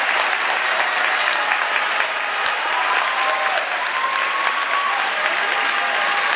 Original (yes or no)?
yes